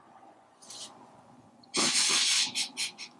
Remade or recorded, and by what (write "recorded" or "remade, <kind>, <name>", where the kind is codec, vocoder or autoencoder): remade, vocoder, Vocos